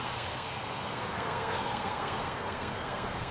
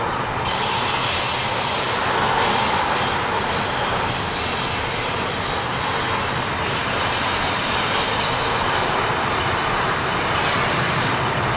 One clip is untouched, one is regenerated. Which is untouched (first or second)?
second